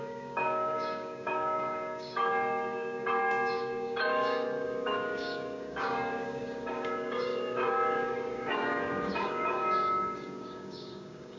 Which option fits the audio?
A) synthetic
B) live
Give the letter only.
A